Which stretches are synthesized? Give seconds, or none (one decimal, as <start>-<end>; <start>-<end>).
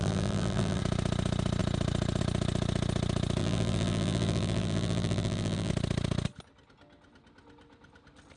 0.0-0.8; 3.4-5.7